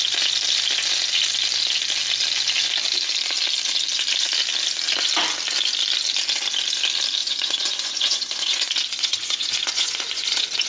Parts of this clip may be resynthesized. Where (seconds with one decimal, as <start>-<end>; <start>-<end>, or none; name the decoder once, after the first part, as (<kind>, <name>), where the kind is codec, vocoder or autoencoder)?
7.2-10.7 (vocoder, Vocos)